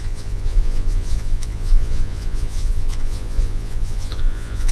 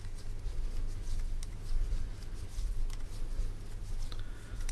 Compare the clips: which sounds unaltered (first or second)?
second